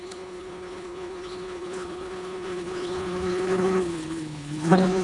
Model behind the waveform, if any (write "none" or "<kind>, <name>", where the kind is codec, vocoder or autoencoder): codec, HILCodec